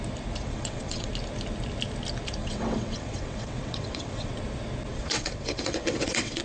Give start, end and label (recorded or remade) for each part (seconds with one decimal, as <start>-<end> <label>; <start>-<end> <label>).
0.0-0.4 recorded; 0.4-1.1 remade; 1.1-2.4 recorded; 2.4-4.3 remade; 4.3-4.9 recorded; 4.9-6.4 remade